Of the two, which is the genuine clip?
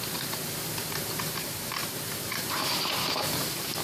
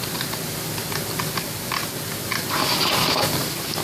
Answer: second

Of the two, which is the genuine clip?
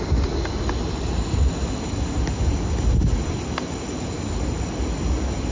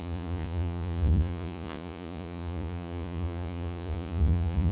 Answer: first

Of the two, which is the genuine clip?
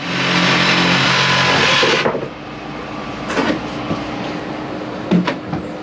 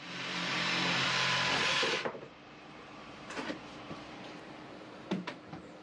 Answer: first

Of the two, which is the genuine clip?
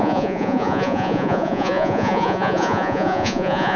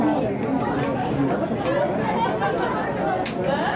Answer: second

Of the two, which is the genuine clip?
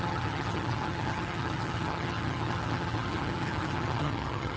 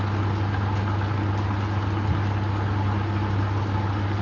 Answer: second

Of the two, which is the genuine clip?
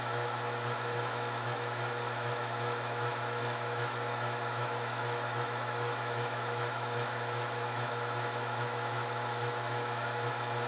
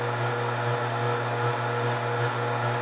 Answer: second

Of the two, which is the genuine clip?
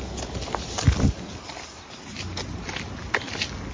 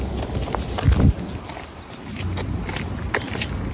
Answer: first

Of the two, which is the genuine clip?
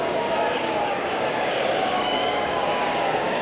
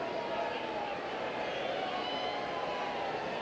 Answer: second